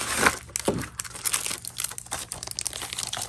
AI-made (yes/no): no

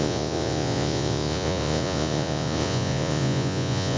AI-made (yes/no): yes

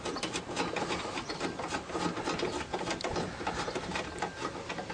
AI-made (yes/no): no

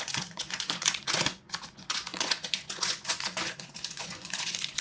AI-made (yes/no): yes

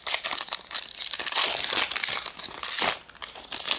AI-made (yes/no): no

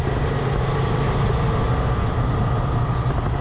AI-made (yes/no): no